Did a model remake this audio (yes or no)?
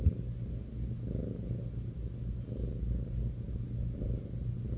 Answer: no